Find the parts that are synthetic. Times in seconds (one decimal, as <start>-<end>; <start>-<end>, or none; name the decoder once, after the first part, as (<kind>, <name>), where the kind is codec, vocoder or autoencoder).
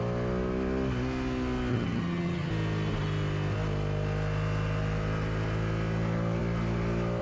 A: 1.7-2.5 (vocoder, HiFi-GAN)